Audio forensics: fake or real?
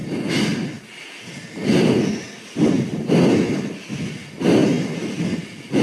real